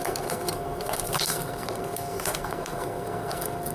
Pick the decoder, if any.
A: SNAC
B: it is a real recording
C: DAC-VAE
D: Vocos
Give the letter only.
A